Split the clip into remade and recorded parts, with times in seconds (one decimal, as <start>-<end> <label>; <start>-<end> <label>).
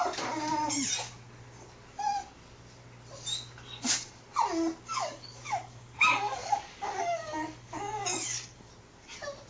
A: 0.0-4.9 recorded; 4.9-8.7 remade; 8.7-9.5 recorded